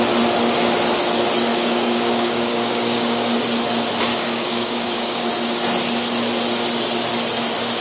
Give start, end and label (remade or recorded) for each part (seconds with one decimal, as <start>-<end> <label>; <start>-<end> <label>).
0.0-1.5 recorded; 1.5-3.4 remade; 3.4-4.1 recorded; 4.1-5.3 remade; 5.3-7.8 recorded